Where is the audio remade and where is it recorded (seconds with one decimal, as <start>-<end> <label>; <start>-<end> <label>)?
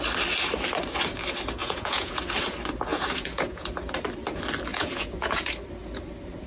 0.0-1.6 recorded; 1.6-2.2 remade; 2.2-2.9 recorded; 2.9-3.7 remade; 3.7-4.7 recorded; 4.7-5.5 remade; 5.5-6.5 recorded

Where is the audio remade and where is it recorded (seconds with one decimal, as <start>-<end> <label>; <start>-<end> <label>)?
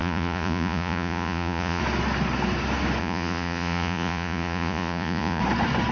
0.0-1.8 remade; 1.8-3.0 recorded; 3.0-5.4 remade; 5.4-5.9 recorded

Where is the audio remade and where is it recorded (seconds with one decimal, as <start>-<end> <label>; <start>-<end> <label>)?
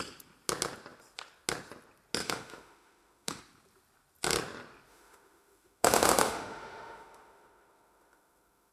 0.0-2.2 recorded; 2.2-3.4 remade; 3.4-4.9 recorded; 4.9-8.7 remade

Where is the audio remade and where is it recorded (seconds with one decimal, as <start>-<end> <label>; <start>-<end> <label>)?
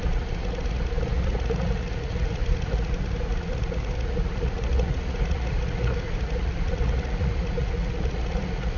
0.0-8.8 remade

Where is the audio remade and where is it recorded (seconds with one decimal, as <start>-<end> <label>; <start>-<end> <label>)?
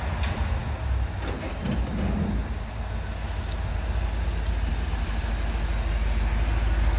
0.0-7.0 recorded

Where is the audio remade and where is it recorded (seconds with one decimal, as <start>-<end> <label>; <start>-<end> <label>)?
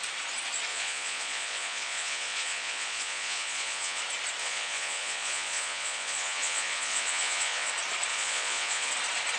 0.0-0.7 recorded; 0.7-4.0 remade; 4.0-4.4 recorded; 4.4-7.7 remade; 7.7-8.1 recorded; 8.1-8.9 remade; 8.9-9.4 recorded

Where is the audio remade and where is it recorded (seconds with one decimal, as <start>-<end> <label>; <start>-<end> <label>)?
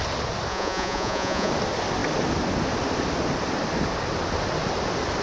0.0-0.5 recorded; 0.5-1.5 remade; 1.5-5.2 recorded